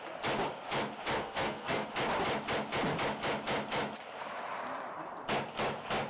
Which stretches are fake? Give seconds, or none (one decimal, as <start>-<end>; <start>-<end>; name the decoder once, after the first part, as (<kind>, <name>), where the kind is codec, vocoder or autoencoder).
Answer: 1.2-1.9 (codec, SNAC)